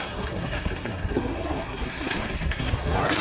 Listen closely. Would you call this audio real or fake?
fake